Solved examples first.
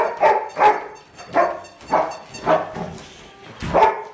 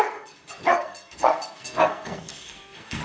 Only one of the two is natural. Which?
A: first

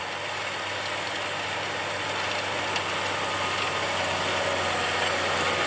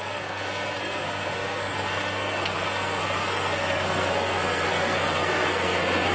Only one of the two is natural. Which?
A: first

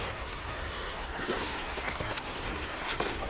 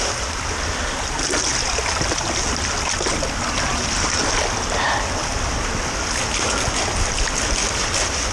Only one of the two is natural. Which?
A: second